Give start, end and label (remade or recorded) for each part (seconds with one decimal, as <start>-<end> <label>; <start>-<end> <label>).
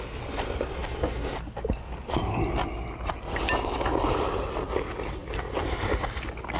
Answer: 0.0-6.6 recorded